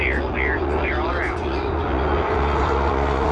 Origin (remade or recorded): remade